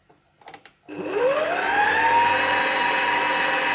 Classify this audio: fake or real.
real